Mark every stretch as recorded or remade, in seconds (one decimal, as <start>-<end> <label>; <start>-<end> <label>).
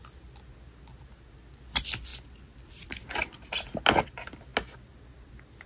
0.0-5.7 recorded